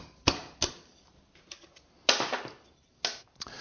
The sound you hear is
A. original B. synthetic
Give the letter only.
A